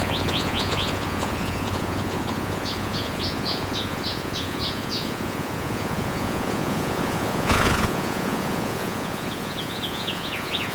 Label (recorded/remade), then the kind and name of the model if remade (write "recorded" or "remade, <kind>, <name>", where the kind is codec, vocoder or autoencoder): remade, vocoder, Vocos